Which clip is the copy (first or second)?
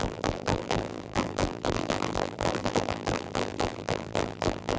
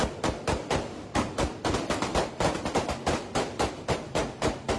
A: first